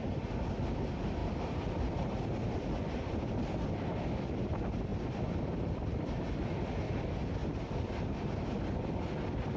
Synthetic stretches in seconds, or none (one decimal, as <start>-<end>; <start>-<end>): 1.2-3.3; 4.9-7.0